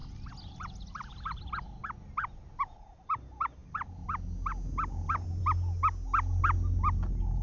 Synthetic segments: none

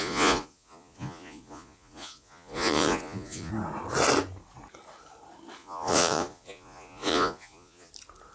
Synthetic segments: 0.0-3.5 (vocoder, Vocos); 5.6-7.9

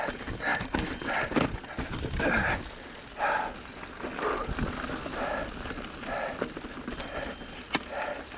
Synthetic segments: none

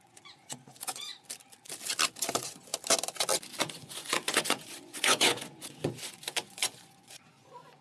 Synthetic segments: 0.0-1.1 (vocoder, Vocos); 2.3-2.7; 3.6-7.8